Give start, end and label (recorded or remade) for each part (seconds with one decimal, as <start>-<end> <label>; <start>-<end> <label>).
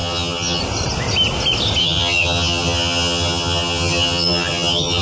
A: 0.0-0.6 remade; 0.6-1.8 recorded; 1.8-5.0 remade